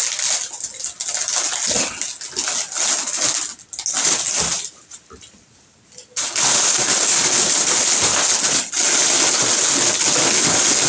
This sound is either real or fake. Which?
real